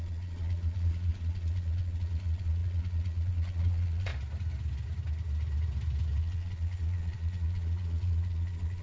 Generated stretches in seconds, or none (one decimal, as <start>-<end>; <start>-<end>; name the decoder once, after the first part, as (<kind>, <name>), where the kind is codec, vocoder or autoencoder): 0.0-4.1 (vocoder, Vocos); 6.2-8.8